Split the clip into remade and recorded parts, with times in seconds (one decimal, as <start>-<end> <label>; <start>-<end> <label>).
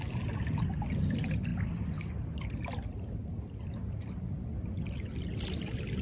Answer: 0.0-6.0 recorded